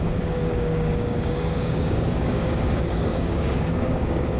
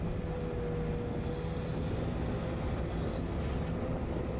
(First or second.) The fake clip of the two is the first